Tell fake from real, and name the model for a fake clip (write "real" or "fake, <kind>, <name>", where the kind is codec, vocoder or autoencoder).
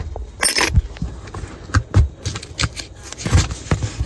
real